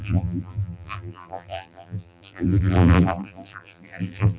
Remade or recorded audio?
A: remade